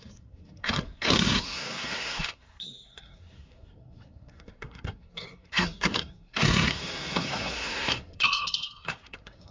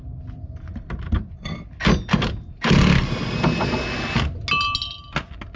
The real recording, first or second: second